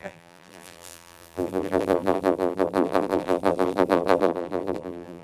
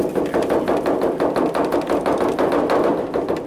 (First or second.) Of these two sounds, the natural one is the second